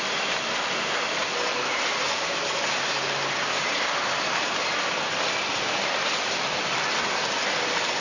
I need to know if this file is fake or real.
real